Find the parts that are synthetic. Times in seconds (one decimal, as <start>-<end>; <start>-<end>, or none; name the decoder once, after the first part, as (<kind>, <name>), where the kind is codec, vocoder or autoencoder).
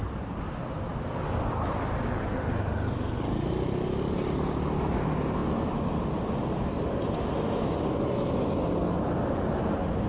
none